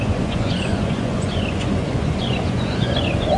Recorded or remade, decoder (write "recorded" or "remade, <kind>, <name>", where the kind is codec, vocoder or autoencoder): remade, vocoder, Vocos